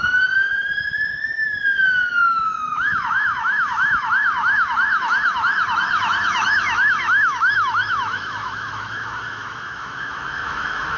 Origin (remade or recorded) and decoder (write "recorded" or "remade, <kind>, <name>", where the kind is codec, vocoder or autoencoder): remade, autoencoder, DAC-VAE